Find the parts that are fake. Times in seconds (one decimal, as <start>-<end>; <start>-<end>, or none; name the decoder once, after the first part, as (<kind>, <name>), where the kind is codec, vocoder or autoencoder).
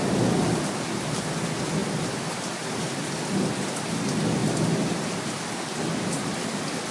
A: none